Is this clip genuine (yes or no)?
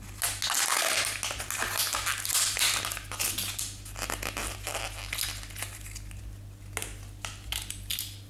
yes